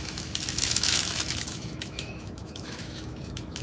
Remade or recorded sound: remade